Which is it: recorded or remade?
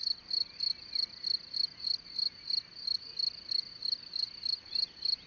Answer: recorded